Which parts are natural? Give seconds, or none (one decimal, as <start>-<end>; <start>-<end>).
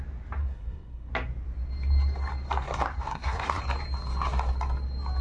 0.0-0.4; 1.1-3.1; 3.6-5.2